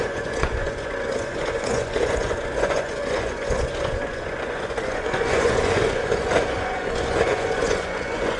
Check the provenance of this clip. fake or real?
fake